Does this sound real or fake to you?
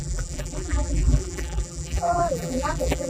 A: fake